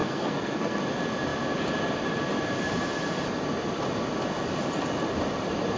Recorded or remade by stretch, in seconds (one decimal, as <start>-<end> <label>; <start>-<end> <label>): 0.0-0.8 remade; 0.8-5.8 recorded